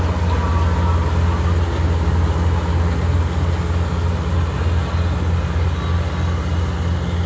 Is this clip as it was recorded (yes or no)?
yes